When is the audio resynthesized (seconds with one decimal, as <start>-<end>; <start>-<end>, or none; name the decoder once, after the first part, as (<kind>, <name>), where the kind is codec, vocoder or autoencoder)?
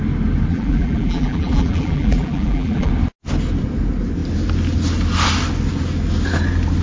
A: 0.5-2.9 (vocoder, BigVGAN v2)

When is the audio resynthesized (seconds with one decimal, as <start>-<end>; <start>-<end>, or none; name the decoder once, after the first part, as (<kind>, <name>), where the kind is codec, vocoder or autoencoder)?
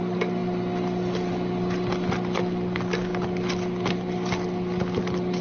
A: none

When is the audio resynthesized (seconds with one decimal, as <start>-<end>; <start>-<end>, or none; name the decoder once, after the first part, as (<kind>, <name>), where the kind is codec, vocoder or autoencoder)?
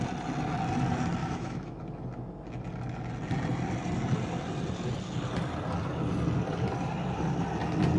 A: 1.2-1.8 (autoencoder, DAC-VAE)